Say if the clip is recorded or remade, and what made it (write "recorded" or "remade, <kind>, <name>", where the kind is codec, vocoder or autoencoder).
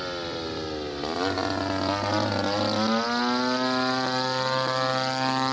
recorded